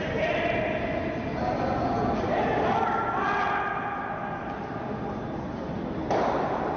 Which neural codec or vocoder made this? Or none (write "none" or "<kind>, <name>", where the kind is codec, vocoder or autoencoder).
none